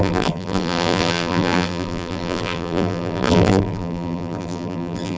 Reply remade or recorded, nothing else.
remade